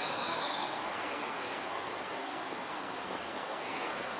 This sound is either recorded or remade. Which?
remade